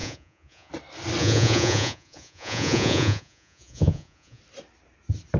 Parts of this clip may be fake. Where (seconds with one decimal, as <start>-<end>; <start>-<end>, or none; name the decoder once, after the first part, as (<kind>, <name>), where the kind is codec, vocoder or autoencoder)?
0.0-0.7 (vocoder, Vocos); 1.2-4.4